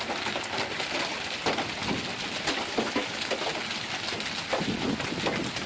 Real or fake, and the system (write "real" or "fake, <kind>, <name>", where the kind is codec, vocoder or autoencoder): real